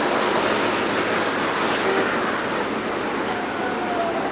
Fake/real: real